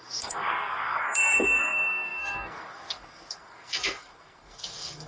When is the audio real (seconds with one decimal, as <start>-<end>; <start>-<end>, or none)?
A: none